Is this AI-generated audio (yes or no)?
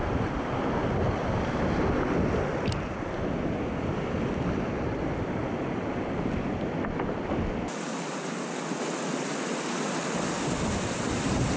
no